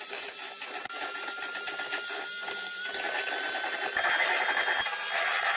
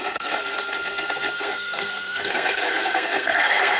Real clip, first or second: first